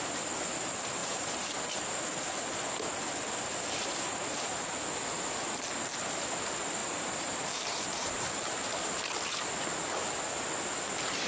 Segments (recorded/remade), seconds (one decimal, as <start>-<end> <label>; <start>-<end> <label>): 0.0-1.0 recorded; 1.0-1.6 remade; 1.6-6.8 recorded; 6.8-8.5 remade; 8.5-11.3 recorded